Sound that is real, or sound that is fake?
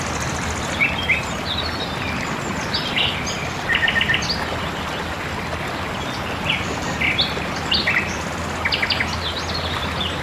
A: real